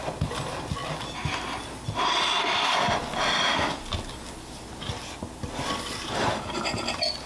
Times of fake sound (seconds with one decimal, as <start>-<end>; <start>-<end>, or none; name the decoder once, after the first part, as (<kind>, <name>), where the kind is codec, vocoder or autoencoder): none